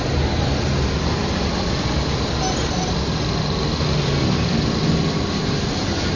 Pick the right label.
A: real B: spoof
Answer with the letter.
A